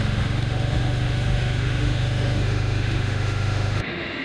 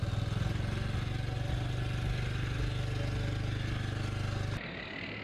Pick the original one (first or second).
second